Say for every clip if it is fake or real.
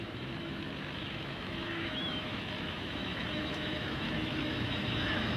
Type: fake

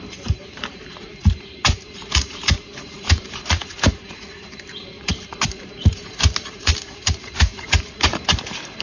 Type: fake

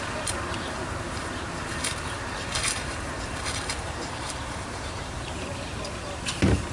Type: fake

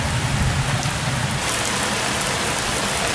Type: real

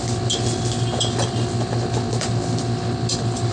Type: fake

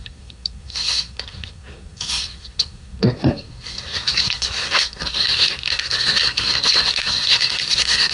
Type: fake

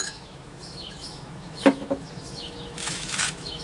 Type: fake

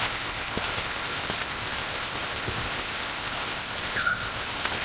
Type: fake